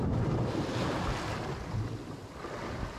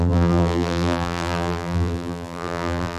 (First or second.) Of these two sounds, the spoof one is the second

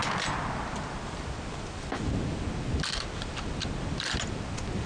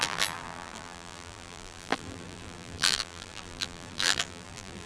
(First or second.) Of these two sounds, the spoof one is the second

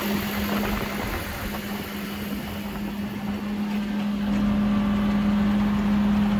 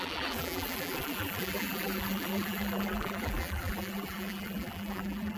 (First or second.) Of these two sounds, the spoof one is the second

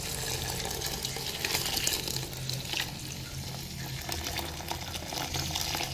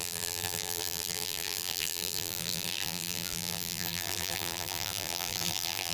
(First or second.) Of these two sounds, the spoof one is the second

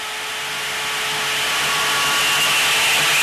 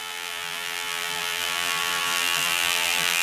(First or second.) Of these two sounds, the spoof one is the second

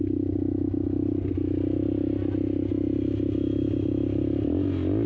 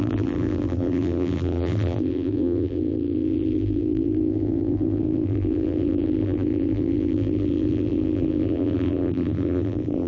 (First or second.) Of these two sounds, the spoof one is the second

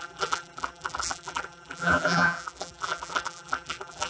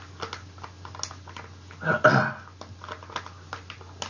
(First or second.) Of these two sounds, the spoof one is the first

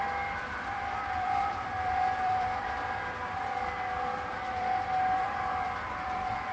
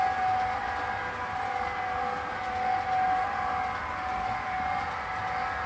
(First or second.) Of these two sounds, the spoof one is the first